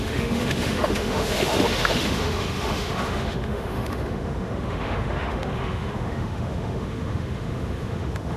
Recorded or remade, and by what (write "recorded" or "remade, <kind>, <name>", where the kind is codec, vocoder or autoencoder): remade, autoencoder, DAC-VAE